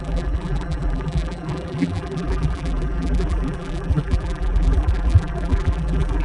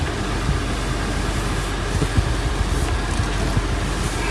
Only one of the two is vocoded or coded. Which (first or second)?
first